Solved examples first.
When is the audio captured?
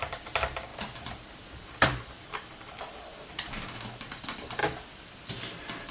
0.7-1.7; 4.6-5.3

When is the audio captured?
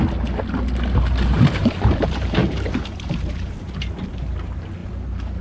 0.0-1.6; 3.7-5.4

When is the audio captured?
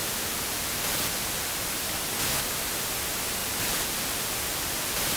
1.8-3.4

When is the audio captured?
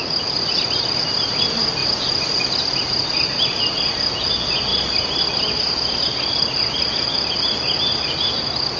0.0-1.8; 3.9-4.7; 7.1-8.8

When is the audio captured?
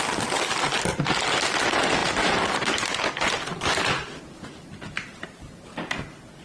0.0-2.0; 3.0-3.5; 5.6-6.4